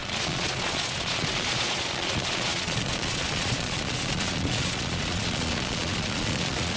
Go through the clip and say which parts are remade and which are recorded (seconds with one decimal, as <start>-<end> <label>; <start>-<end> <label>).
0.0-6.8 remade